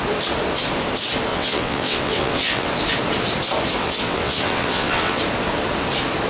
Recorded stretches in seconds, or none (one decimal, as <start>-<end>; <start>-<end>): 0.0-1.3; 2.7-3.8; 5.2-6.3